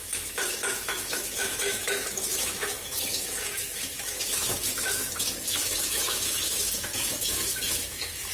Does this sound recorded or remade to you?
remade